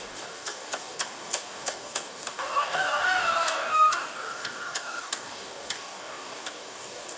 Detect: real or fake fake